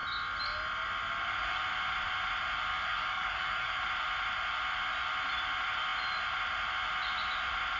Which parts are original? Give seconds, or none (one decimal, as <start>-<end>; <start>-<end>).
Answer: 0.0-2.7; 3.8-7.8